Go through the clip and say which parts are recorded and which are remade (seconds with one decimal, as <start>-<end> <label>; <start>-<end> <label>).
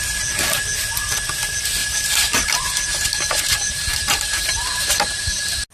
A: 0.0-1.8 recorded; 1.8-5.2 remade; 5.2-5.7 recorded